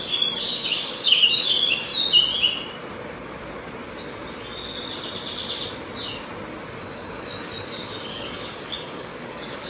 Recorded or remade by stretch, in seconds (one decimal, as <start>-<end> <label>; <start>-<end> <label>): 0.0-1.9 remade; 1.9-6.8 recorded; 6.8-9.7 remade